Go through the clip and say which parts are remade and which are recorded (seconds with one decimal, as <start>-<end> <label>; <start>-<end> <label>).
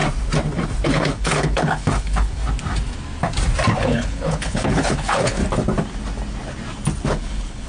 0.0-0.9 recorded; 0.9-2.4 remade; 2.4-3.8 recorded; 3.8-5.4 remade; 5.4-7.1 recorded; 7.1-7.7 remade